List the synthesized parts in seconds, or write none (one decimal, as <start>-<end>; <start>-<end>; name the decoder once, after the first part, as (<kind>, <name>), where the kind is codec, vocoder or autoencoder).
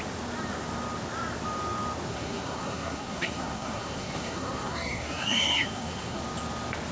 2.1-6.2 (codec, SNAC)